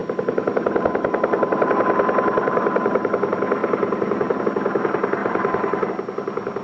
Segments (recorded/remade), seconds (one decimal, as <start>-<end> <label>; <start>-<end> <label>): 0.0-1.7 remade; 1.7-2.4 recorded; 2.4-3.1 remade; 3.1-3.6 recorded; 3.6-4.4 remade; 4.4-5.2 recorded; 5.2-5.9 remade; 5.9-6.6 recorded